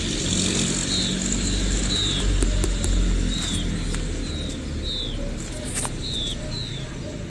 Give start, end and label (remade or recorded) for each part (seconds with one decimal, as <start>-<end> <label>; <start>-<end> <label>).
0.0-7.3 recorded